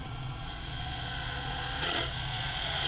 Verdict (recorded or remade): remade